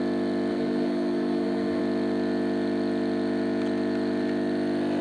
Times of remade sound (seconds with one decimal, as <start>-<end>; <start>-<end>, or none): 0.5-1.8